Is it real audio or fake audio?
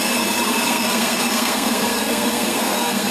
fake